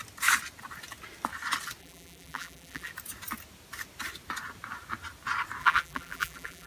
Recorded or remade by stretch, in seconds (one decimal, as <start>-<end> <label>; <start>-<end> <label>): 0.0-1.8 recorded; 1.8-2.9 remade; 2.9-5.6 recorded; 5.6-6.7 remade